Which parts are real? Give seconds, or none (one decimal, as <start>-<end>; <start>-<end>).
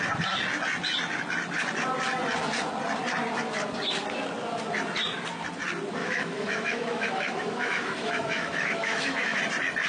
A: 0.0-6.0; 9.4-9.9